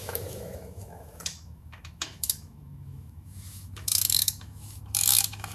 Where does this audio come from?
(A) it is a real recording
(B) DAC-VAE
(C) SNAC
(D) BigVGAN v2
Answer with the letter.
B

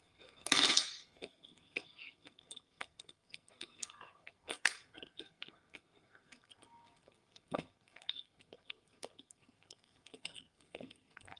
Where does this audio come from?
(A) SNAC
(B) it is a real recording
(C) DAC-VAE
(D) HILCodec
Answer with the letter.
A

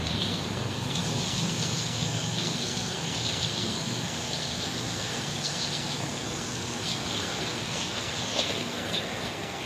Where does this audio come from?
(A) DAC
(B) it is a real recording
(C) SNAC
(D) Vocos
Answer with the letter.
C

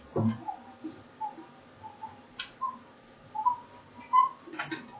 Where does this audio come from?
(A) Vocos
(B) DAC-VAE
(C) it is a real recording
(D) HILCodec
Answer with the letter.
C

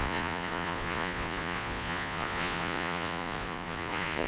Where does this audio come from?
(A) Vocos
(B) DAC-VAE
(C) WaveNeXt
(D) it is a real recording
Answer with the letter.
A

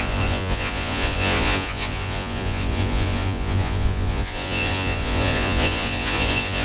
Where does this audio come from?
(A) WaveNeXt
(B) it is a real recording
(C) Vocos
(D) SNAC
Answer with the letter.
C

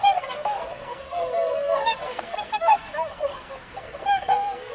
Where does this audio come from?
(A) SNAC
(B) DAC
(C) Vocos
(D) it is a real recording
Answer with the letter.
A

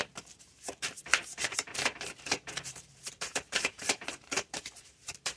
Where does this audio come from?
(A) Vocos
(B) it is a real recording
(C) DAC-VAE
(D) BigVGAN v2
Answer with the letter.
D